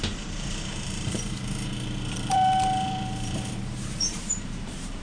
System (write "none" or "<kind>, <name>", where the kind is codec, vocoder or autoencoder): vocoder, BigVGAN v2